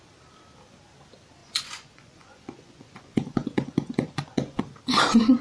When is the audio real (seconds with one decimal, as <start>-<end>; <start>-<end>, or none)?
0.0-1.4; 4.6-5.4